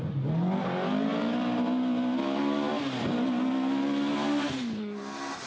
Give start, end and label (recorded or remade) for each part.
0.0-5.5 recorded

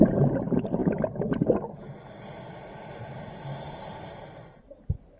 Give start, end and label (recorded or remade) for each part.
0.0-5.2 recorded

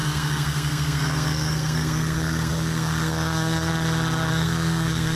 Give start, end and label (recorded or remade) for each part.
0.0-3.7 remade; 3.7-4.3 recorded; 4.3-5.2 remade

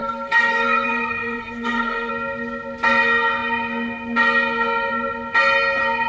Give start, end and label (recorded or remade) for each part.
0.0-2.1 remade; 2.1-6.1 recorded

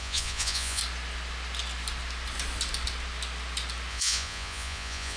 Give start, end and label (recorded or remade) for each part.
0.0-0.8 remade; 0.8-3.9 recorded; 3.9-5.2 remade

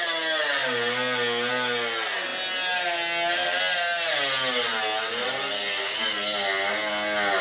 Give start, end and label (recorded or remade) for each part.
0.0-7.4 recorded

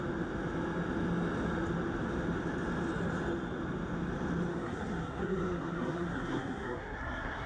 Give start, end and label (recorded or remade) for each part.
0.0-4.5 recorded; 4.5-7.5 remade

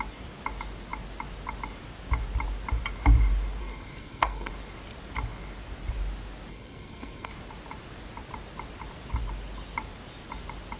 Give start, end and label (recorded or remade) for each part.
0.0-3.6 recorded; 3.6-4.5 remade; 4.5-6.5 recorded; 6.5-7.3 remade; 7.3-10.8 recorded